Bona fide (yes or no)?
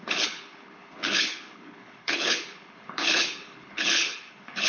no